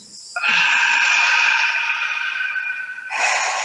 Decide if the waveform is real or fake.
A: real